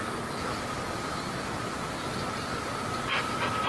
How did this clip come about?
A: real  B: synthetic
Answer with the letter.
A